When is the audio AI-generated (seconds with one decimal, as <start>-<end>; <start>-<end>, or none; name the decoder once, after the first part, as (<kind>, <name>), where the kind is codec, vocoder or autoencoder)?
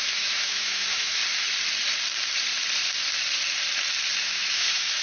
0.0-1.2 (autoencoder, DAC-VAE); 4.2-5.0